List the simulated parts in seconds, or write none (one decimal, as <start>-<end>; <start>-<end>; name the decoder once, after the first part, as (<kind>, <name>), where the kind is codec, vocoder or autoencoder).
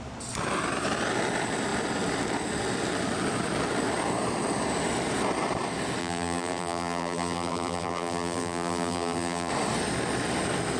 6.0-9.5 (vocoder, BigVGAN v2)